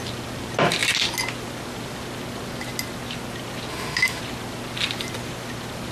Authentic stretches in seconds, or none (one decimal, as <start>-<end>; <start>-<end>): 0.0-3.7; 4.2-5.9